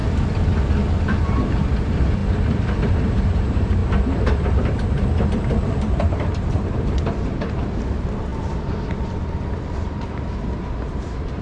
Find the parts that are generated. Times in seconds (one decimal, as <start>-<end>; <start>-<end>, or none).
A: 1.3-2.2; 2.8-8.3; 10.9-11.4